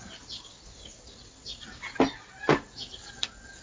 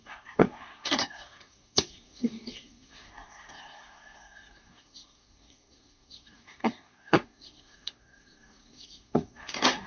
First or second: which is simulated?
second